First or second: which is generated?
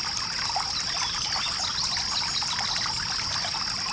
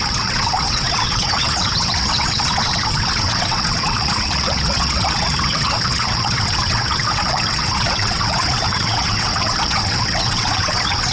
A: second